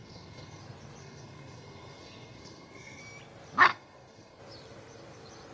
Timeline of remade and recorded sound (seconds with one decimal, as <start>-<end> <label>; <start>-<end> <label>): 0.0-0.6 remade; 0.6-1.0 recorded; 1.0-3.0 remade; 3.0-3.7 recorded; 3.7-4.4 remade; 4.4-5.5 recorded